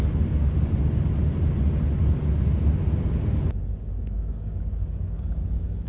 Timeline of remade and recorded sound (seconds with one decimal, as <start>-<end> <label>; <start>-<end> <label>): 0.0-3.7 recorded; 3.7-5.9 remade